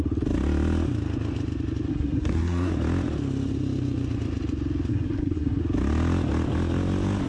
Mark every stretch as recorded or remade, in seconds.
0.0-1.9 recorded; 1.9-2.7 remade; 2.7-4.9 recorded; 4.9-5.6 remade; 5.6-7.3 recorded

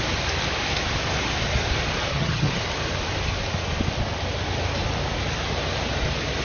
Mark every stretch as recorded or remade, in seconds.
0.0-2.1 recorded; 2.1-2.6 remade; 2.6-6.4 recorded